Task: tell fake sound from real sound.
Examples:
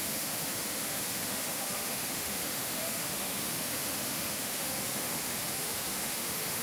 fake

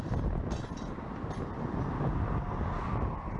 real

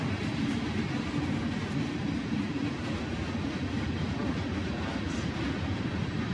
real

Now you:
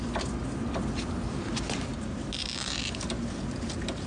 real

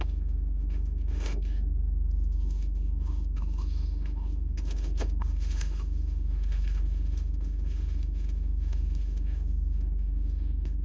fake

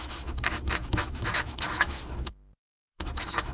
fake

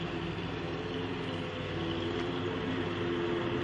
real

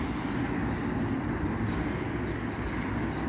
real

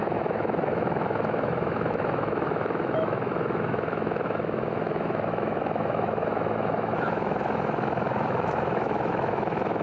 fake